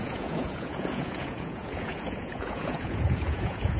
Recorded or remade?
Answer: remade